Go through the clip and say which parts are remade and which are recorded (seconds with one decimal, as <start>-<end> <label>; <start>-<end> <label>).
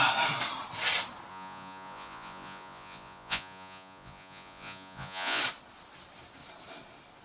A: 0.0-1.3 recorded; 1.3-5.4 remade; 5.4-7.2 recorded